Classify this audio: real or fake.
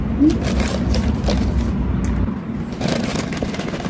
real